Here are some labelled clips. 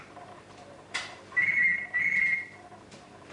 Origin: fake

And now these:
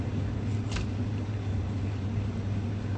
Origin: real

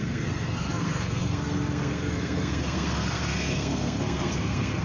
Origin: fake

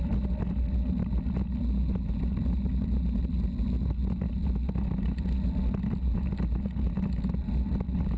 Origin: real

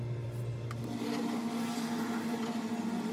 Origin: real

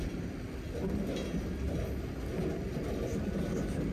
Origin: real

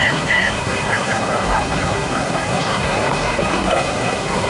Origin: fake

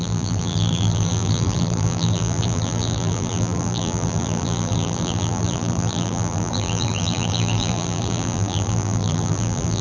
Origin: fake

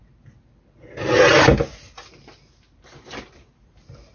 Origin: real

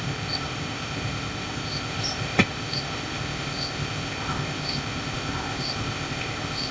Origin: fake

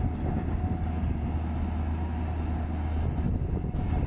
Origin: real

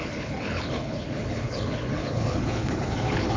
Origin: fake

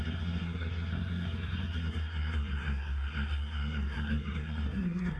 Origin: fake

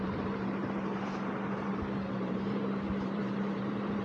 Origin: fake